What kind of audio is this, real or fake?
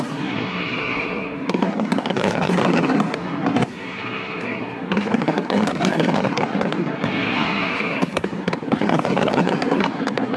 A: fake